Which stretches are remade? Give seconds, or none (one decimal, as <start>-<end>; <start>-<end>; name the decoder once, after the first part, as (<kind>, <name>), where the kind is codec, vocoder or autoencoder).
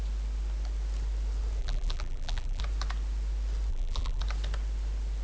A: 1.6-2.6 (vocoder, BigVGAN v2); 3.7-4.2